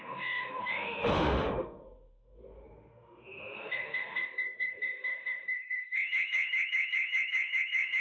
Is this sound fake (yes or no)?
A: yes